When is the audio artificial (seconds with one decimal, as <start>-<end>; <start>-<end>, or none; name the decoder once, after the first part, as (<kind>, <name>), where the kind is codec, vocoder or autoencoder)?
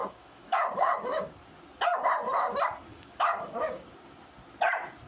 0.0-1.3 (codec, DAC); 2.9-3.9